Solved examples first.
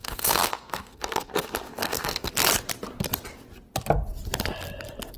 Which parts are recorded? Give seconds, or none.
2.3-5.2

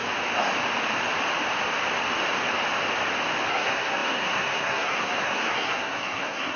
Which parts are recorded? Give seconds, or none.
0.0-3.5